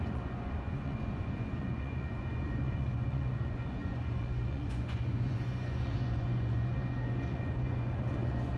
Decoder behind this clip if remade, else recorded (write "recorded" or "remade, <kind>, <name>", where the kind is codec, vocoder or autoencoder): remade, vocoder, Vocos